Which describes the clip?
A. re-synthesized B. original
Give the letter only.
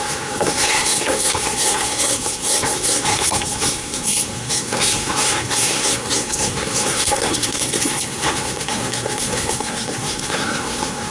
A